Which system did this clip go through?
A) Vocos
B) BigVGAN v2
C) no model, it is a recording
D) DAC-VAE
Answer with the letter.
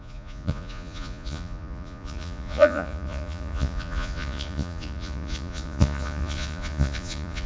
A